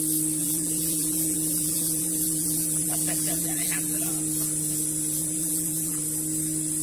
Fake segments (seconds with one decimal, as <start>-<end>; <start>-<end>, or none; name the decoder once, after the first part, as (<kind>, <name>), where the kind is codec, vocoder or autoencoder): 0.4-4.1 (vocoder, BigVGAN v2); 5.2-6.0